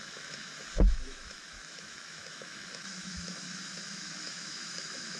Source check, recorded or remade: remade